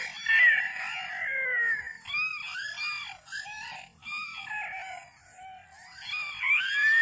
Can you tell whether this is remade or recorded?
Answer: recorded